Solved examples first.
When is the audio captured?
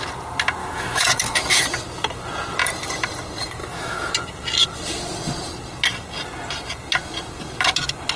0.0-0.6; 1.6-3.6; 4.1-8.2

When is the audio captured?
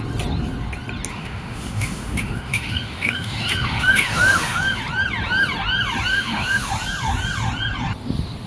0.0-1.1; 4.8-6.1; 6.7-8.5